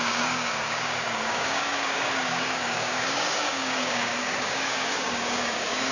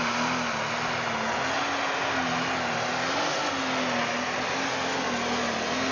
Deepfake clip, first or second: first